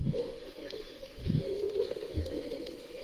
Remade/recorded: remade